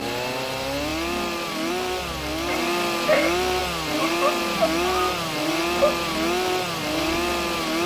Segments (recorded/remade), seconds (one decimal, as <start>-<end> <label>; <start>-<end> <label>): 0.0-7.9 recorded